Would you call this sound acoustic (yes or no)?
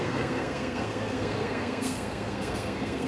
no